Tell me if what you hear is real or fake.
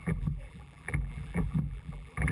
fake